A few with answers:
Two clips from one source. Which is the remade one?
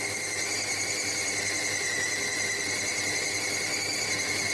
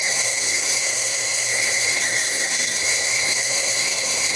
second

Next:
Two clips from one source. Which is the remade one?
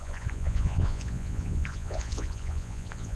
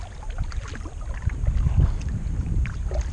first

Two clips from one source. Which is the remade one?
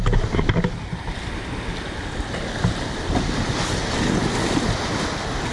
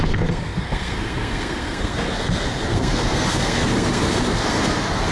second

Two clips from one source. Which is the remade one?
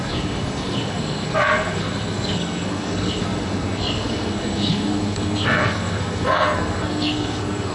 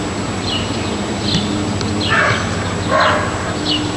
first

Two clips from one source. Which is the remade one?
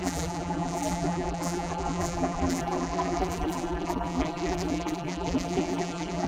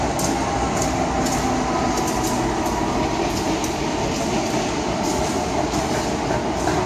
first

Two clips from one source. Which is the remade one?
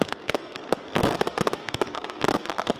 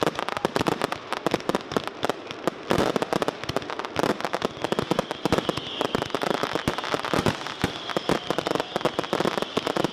first